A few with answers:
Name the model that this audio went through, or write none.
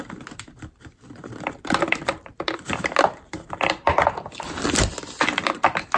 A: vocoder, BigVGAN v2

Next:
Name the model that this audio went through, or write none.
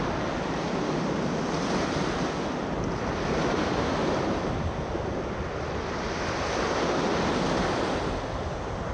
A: none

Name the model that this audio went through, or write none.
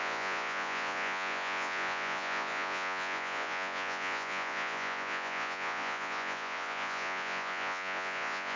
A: vocoder, Vocos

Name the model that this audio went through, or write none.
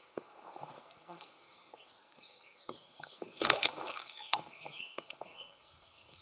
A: codec, SNAC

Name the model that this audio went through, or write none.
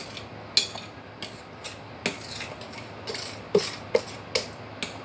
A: none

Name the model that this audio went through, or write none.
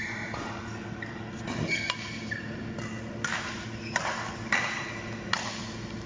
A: none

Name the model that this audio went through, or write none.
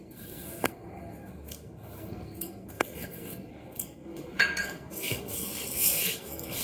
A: codec, SNAC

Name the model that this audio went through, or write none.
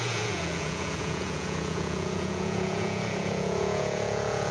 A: vocoder, Vocos